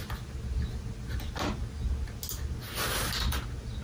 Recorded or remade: recorded